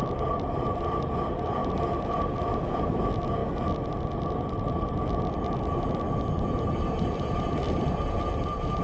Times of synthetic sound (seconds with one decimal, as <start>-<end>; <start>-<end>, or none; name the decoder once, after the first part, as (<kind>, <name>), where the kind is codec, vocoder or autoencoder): none